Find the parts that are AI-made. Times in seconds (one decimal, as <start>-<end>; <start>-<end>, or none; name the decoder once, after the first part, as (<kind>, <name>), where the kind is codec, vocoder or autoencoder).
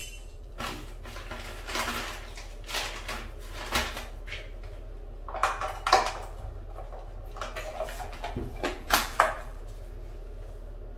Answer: 0.0-0.5 (vocoder, BigVGAN v2); 7.7-9.6